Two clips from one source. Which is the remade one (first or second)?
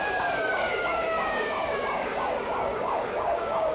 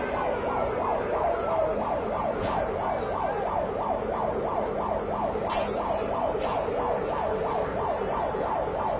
first